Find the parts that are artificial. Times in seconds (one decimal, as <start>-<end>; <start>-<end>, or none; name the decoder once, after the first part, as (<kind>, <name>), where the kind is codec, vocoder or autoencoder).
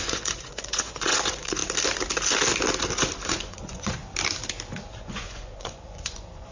0.0-1.6 (vocoder, Vocos); 3.3-4.0; 4.9-6.5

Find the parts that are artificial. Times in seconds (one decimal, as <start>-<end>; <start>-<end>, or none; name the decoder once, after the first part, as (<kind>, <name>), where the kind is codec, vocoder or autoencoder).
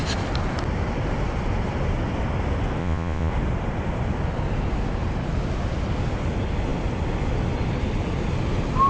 2.8-3.3 (vocoder, Vocos)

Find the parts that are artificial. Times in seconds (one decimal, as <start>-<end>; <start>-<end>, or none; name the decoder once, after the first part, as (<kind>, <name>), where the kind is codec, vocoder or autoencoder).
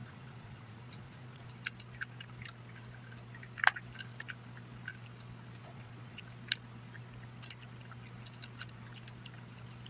0.0-1.5 (vocoder, Vocos); 5.6-6.2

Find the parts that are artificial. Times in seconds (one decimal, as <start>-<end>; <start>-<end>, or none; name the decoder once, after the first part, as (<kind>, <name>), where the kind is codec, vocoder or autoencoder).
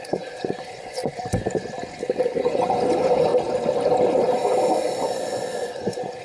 0.0-1.0 (vocoder, Vocos); 2.5-3.3; 4.6-6.2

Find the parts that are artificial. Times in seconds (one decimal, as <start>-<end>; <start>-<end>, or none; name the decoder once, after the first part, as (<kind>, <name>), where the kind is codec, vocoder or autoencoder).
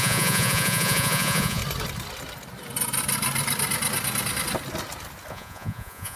0.0-1.6 (vocoder, Vocos); 5.3-6.2